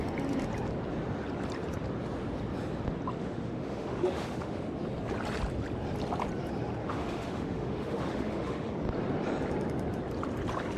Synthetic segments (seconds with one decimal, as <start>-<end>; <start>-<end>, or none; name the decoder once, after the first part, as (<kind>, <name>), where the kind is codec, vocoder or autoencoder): 3.2-4.7 (autoencoder, DAC-VAE); 6.8-8.7